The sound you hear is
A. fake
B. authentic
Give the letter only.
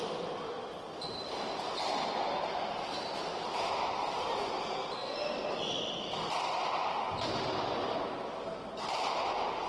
B